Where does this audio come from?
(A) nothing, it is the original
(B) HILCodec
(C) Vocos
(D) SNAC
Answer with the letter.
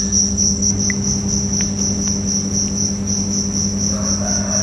A